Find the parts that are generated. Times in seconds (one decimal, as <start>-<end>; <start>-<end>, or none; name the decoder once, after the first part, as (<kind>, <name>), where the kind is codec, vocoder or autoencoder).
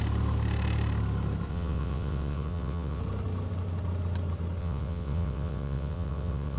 1.5-3.0 (vocoder, WaveNeXt); 4.6-6.6